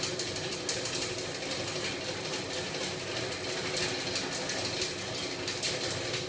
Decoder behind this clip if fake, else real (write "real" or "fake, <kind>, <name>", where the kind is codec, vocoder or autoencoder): real